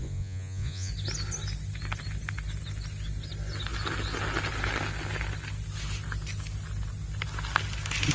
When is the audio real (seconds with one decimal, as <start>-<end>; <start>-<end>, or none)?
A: 0.9-8.1